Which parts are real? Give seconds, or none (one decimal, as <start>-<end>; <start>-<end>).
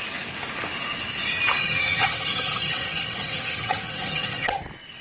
0.0-1.6; 4.6-5.0